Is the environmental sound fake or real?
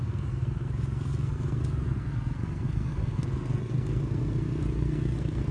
fake